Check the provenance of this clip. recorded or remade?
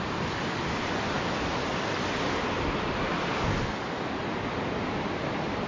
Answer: recorded